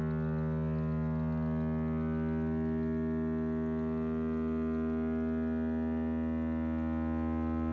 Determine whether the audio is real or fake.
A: real